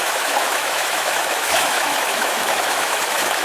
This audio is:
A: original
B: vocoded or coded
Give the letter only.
B